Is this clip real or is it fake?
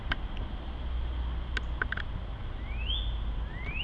real